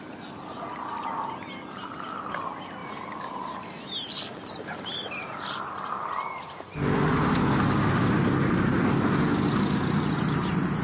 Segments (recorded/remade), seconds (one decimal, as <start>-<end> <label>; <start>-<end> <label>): 0.0-10.8 recorded